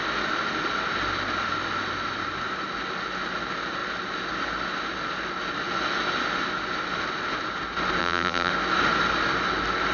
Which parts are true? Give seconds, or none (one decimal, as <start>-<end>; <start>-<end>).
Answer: 0.0-8.0; 8.5-9.9